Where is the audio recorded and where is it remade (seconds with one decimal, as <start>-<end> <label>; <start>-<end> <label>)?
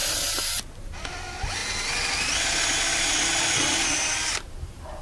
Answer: 0.0-1.1 recorded; 1.1-1.6 remade; 1.6-4.6 recorded; 4.6-5.0 remade